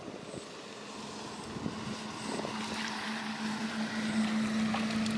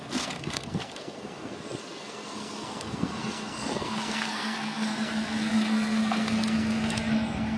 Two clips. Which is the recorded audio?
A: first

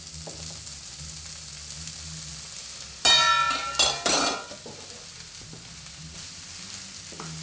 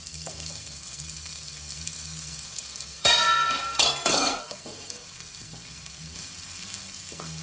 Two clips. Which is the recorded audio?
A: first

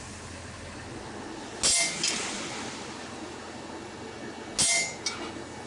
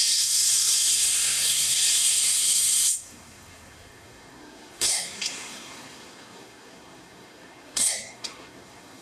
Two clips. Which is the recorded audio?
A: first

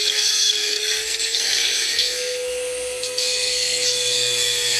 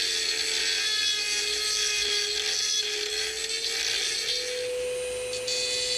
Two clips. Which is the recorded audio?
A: second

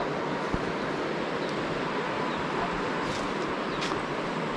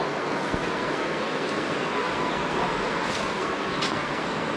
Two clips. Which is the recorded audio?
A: first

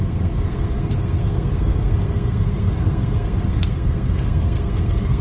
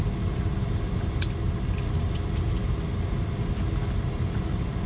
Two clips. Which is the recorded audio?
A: second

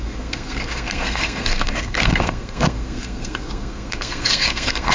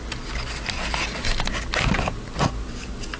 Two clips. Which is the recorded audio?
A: second